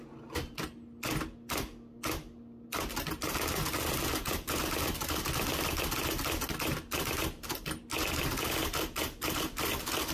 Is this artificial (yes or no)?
no